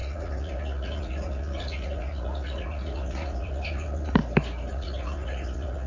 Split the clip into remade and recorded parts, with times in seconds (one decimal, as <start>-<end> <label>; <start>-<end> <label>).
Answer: 0.0-4.2 remade; 4.2-4.7 recorded; 4.7-5.9 remade